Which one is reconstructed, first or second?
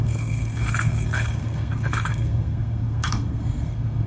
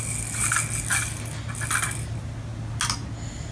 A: first